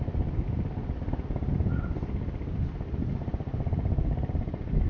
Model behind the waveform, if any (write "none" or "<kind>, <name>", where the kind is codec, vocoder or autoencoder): none